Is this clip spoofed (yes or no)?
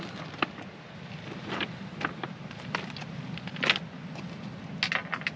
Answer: no